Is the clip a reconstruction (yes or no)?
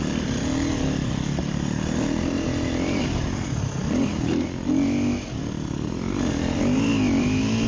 no